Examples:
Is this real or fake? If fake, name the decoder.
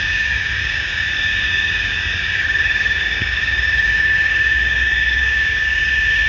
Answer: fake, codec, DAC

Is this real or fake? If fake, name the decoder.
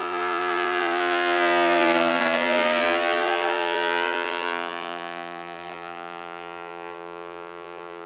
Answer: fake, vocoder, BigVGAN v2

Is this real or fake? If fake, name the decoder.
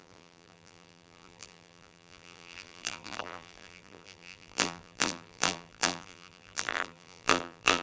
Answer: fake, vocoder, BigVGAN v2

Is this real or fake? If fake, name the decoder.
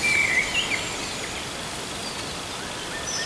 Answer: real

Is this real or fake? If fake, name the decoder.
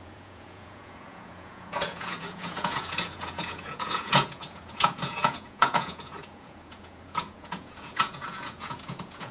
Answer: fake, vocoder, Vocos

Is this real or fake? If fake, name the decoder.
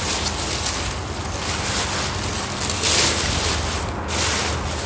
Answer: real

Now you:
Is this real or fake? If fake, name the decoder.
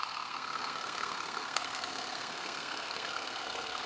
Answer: fake, codec, SNAC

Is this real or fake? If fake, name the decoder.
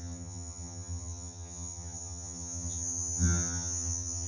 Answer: fake, vocoder, HiFi-GAN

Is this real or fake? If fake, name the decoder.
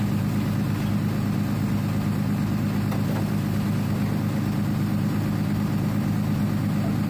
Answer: real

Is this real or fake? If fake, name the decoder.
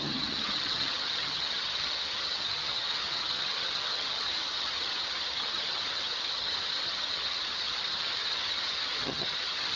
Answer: fake, vocoder, HiFi-GAN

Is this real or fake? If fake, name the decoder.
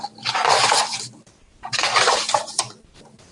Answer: fake, vocoder, BigVGAN v2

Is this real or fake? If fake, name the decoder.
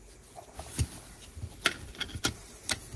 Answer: real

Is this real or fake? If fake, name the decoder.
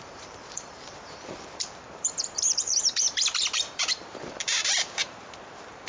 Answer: fake, vocoder, BigVGAN v2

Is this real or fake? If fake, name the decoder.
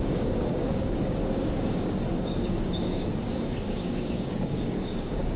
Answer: fake, codec, DAC